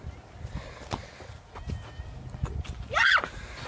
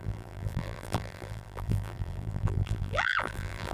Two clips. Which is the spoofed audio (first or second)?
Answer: second